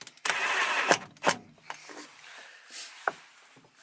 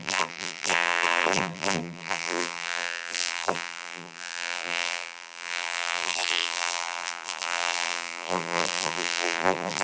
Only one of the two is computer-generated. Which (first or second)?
second